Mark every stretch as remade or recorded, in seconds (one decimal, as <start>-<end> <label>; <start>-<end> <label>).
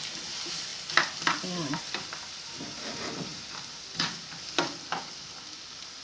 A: 0.0-6.0 recorded